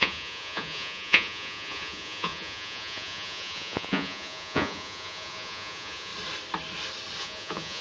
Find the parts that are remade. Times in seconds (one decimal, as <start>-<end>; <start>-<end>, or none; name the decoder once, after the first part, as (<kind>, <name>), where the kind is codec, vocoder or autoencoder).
0.0-6.1 (vocoder, Vocos); 7.2-7.8